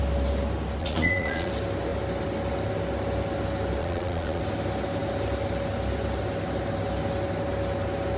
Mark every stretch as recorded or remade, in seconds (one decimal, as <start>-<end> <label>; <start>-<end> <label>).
0.0-0.8 recorded; 0.8-1.5 remade; 1.5-3.8 recorded; 3.8-4.4 remade; 4.4-8.2 recorded